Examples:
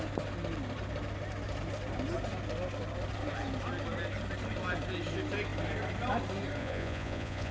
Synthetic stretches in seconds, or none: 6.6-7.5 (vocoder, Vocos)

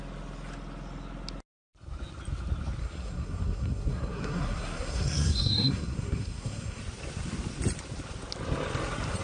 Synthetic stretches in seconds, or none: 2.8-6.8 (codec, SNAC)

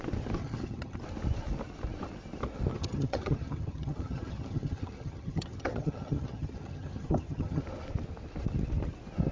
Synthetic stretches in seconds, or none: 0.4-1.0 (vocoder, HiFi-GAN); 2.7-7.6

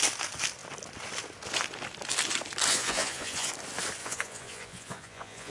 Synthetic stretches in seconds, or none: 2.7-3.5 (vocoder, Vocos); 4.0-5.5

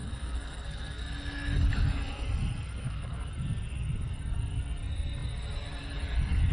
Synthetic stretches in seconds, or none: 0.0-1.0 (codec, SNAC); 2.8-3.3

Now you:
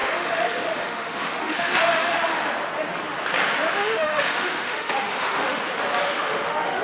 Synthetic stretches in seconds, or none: 0.0-2.5 (autoencoder, DAC-VAE); 3.8-5.6; 6.0-6.8